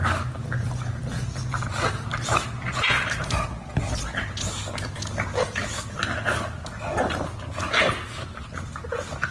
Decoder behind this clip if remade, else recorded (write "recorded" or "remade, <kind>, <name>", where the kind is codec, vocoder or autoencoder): recorded